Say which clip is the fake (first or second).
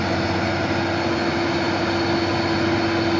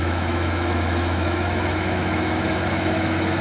second